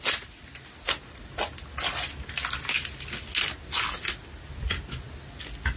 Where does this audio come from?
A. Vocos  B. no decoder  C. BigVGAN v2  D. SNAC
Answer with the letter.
B